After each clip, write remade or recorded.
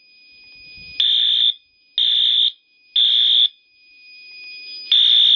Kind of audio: recorded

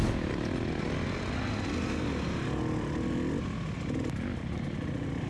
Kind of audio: recorded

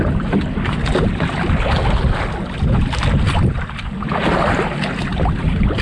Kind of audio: recorded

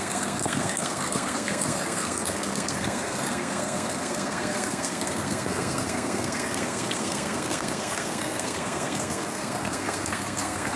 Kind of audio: remade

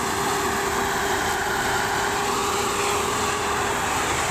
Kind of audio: recorded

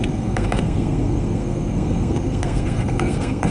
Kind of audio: remade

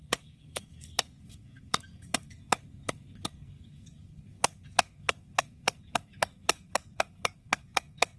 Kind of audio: remade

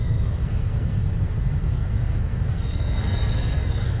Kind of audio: remade